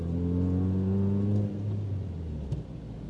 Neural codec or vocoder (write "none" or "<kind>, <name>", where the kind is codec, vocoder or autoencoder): none